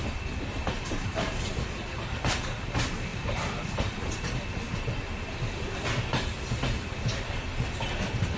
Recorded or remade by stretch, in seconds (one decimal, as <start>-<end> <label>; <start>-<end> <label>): 0.0-0.6 recorded; 0.6-1.8 remade; 1.8-3.1 recorded; 3.1-4.4 remade; 4.4-8.4 recorded